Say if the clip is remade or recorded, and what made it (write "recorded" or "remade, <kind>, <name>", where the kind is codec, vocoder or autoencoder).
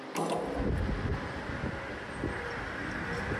recorded